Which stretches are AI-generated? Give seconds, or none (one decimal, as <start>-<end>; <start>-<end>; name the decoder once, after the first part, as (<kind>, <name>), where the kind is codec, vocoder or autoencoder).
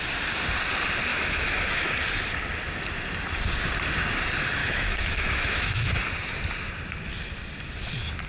1.1-1.9 (autoencoder, DAC-VAE); 4.6-6.0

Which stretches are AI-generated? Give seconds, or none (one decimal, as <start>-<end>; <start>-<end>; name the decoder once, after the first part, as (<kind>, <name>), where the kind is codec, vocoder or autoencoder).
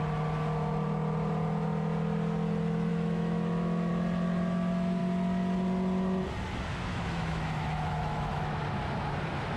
2.9-3.9 (autoencoder, DAC-VAE); 6.9-8.6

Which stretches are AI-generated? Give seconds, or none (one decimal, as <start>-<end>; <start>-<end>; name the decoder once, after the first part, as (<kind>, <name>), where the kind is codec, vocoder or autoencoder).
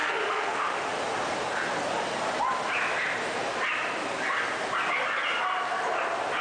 0.0-0.9 (autoencoder, DAC-VAE)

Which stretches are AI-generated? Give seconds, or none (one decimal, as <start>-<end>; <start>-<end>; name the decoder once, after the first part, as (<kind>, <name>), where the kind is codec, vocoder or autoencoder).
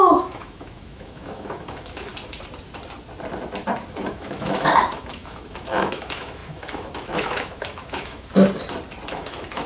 0.0-2.1 (autoencoder, DAC-VAE); 4.1-8.3; 9.1-9.7